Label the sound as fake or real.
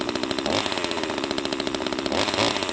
real